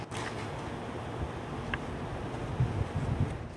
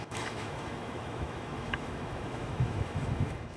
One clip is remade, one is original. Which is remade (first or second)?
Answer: second